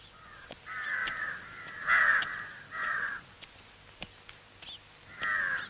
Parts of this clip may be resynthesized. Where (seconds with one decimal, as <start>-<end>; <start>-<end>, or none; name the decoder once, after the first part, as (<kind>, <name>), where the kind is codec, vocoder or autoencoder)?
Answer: 0.0-0.6 (vocoder, Vocos); 2.8-3.7